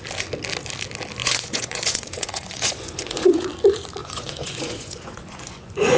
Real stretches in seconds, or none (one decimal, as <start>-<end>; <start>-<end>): 0.0-1.2; 3.5-4.0